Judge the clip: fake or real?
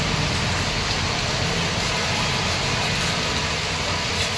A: real